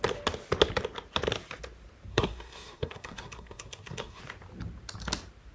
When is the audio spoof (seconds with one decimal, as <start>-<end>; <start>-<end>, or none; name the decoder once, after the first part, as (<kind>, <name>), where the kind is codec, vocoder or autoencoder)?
2.1-4.2 (codec, SNAC)